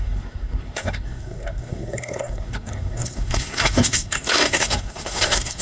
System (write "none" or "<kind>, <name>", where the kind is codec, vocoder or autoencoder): codec, SNAC